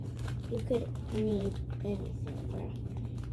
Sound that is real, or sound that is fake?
fake